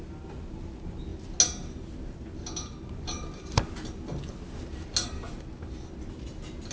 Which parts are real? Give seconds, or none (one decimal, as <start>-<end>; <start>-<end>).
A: 0.0-6.7